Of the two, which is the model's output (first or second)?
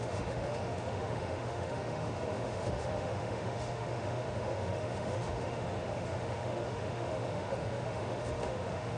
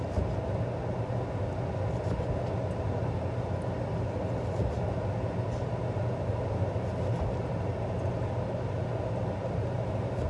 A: first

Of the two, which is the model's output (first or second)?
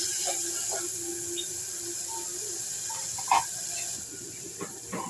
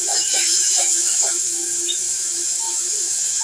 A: second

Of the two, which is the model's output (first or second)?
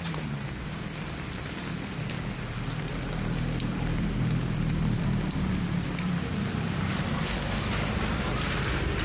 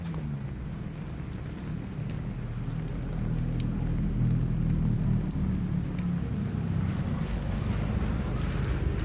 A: first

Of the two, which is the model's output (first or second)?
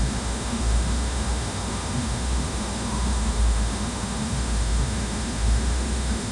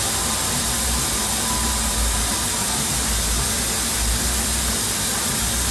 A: first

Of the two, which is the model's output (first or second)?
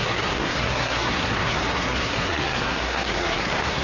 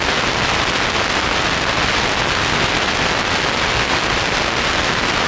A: first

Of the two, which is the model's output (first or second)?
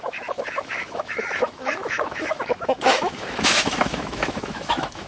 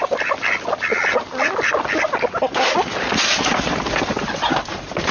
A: first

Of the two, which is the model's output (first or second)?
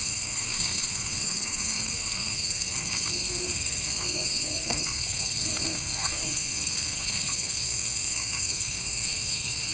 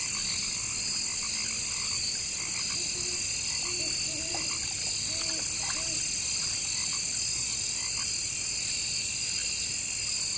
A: first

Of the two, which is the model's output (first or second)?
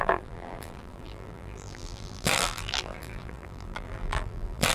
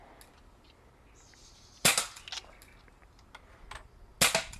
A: first